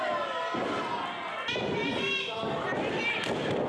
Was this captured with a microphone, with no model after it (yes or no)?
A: yes